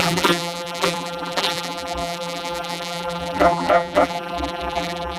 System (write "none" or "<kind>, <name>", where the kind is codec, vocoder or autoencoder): vocoder, BigVGAN v2